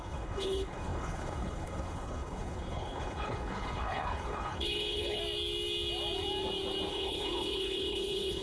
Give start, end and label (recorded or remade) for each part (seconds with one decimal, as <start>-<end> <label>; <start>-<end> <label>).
0.0-5.2 remade; 5.2-6.9 recorded; 6.9-8.4 remade